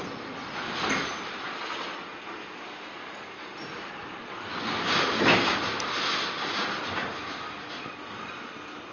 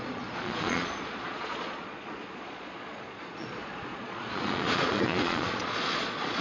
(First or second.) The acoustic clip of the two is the first